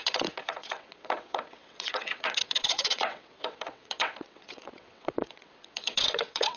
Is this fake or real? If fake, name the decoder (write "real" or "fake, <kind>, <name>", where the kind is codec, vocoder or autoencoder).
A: fake, vocoder, WaveNeXt